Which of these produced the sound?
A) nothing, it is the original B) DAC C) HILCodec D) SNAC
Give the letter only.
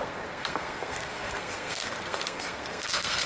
D